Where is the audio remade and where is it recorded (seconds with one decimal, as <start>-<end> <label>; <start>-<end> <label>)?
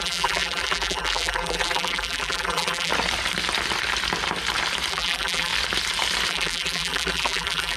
0.0-2.9 remade; 2.9-4.9 recorded; 4.9-5.5 remade; 5.5-6.3 recorded; 6.3-7.8 remade